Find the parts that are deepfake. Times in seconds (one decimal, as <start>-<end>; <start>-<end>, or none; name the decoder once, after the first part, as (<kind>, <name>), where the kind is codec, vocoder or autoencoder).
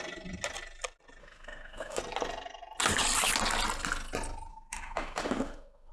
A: 1.2-2.0 (autoencoder, DAC-VAE); 4.5-5.9